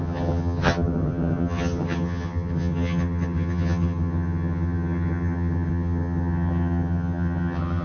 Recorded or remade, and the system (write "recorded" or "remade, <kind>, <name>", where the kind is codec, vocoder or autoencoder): remade, vocoder, HiFi-GAN